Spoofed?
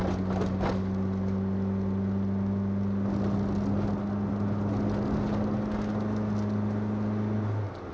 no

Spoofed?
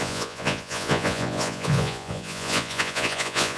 yes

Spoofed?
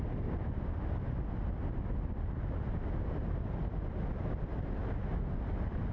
no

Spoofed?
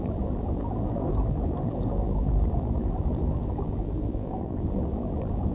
yes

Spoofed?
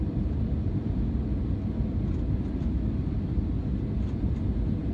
no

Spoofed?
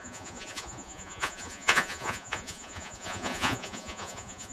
yes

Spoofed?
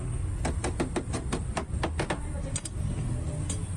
no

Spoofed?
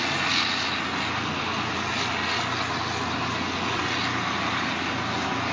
no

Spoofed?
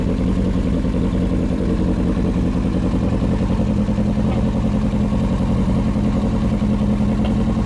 no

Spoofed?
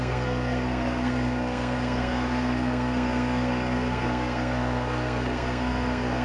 yes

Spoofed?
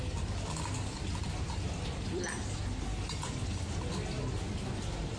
no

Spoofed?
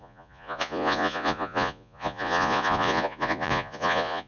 yes